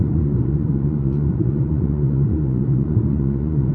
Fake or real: fake